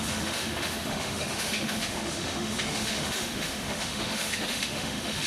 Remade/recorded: remade